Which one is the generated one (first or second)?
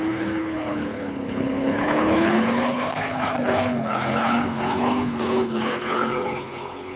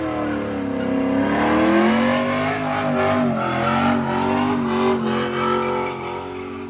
first